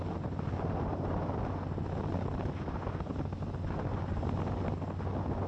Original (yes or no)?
yes